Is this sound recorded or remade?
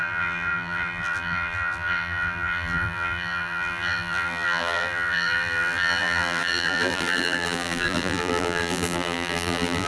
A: remade